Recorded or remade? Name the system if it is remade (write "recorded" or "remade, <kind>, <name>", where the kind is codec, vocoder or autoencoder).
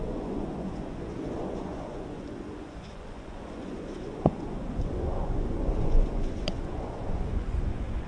remade, vocoder, Vocos